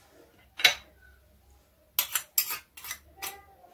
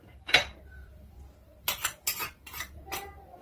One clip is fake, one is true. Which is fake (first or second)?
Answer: second